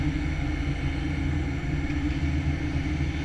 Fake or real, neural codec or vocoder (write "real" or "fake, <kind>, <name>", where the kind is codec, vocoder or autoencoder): real